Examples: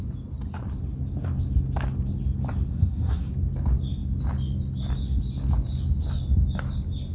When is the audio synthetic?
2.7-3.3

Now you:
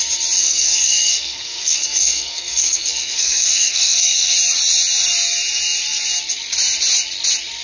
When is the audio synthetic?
0.4-4.3

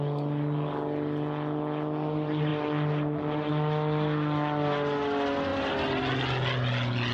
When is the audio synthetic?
none

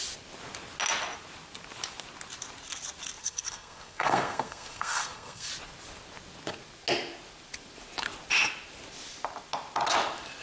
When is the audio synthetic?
3.2-5.5